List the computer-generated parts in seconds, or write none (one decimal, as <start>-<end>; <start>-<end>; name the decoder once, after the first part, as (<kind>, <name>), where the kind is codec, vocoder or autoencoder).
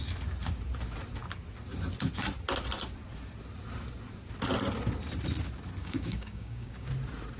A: 5.8-6.9 (codec, DAC)